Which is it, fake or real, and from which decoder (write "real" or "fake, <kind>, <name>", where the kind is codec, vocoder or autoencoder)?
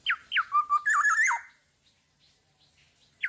real